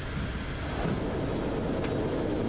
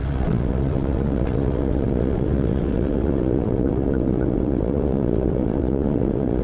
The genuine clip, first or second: first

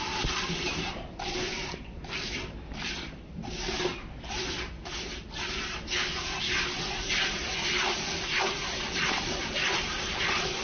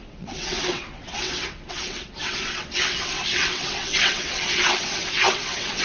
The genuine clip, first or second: first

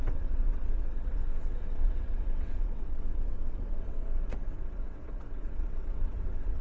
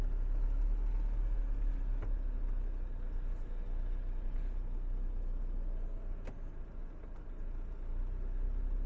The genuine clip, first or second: second